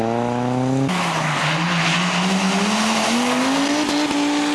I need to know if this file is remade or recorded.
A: recorded